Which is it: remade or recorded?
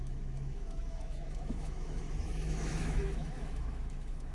remade